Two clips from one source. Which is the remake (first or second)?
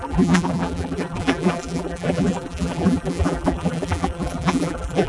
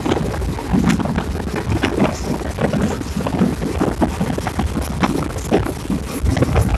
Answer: first